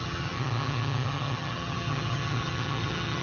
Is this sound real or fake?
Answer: fake